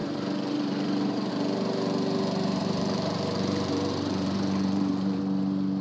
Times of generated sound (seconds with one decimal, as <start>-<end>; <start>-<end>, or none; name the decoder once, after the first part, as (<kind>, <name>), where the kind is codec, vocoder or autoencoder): 0.0-1.3 (vocoder, BigVGAN v2); 2.6-5.2